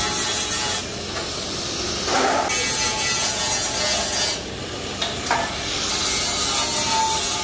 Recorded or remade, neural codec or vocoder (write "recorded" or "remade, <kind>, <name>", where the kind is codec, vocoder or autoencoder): recorded